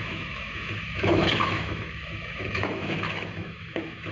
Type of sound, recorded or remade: remade